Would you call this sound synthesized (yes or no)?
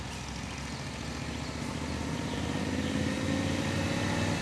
no